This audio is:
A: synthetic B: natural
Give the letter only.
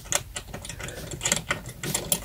B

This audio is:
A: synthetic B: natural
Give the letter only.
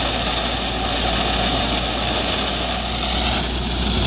B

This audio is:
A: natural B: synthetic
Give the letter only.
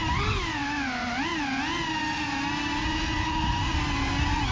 A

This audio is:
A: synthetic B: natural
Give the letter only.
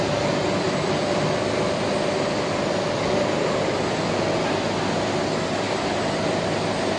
B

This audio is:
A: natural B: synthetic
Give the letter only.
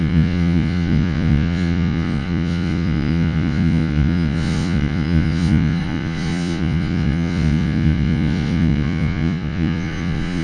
B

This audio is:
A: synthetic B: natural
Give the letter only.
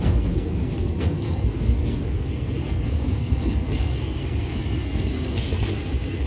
A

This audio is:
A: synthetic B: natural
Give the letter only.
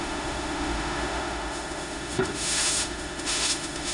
A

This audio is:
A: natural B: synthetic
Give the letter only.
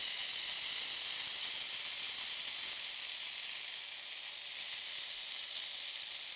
A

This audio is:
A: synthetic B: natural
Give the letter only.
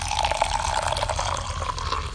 B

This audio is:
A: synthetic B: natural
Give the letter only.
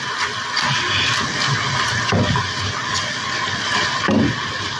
B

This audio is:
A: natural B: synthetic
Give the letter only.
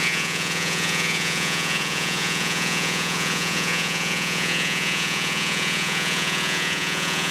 B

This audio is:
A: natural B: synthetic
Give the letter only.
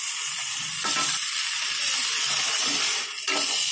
B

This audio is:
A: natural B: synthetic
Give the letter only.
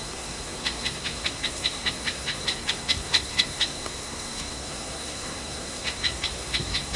B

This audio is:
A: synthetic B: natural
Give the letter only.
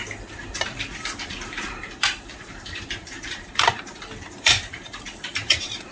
A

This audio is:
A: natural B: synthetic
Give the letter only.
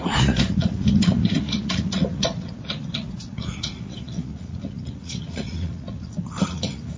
B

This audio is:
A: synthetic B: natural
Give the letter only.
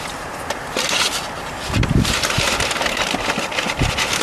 B